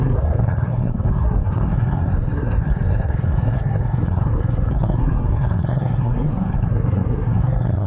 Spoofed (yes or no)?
yes